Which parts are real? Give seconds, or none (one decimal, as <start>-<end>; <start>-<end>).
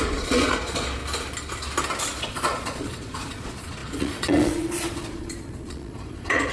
1.0-2.2